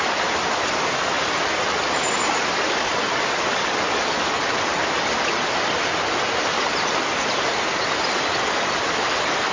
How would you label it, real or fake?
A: real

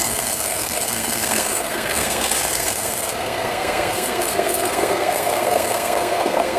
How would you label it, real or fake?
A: fake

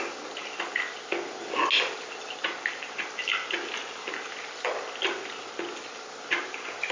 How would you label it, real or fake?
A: real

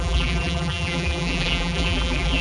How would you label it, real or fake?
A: fake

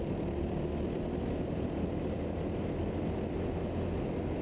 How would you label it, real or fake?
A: real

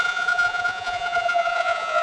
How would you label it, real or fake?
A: fake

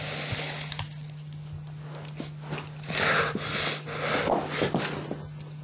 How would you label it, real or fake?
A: real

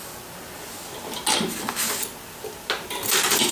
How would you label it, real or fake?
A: real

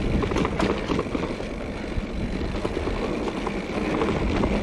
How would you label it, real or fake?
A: real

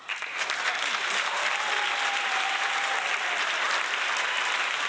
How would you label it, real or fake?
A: fake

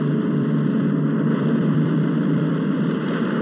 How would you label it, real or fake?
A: fake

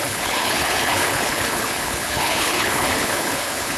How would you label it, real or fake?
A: fake